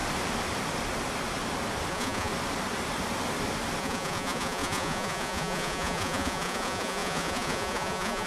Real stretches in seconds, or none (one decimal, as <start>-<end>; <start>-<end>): 0.0-1.9; 2.3-3.8